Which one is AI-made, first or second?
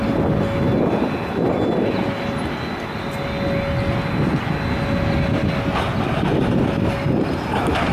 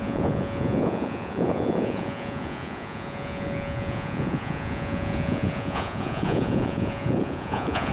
second